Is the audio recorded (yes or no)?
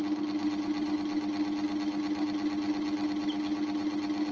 yes